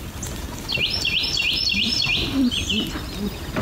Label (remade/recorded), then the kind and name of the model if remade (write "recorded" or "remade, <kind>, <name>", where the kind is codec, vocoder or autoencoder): recorded